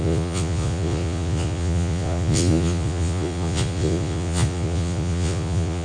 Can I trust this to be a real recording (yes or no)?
no